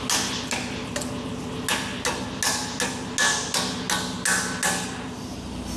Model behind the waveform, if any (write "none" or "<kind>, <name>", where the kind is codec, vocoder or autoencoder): none